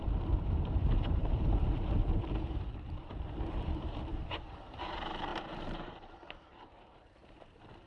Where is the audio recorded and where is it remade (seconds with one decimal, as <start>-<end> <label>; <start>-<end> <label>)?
0.0-7.9 remade